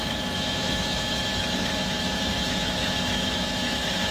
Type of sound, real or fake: fake